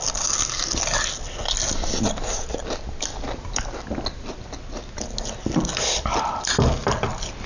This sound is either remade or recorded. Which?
recorded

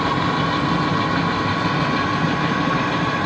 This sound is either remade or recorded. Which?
recorded